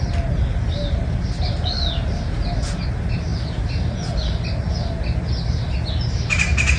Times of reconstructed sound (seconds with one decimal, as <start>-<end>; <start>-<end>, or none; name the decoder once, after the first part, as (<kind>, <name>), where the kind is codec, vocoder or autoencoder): none